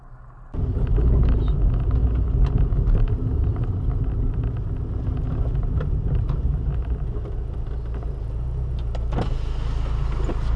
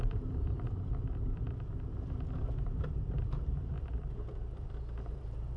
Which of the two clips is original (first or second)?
first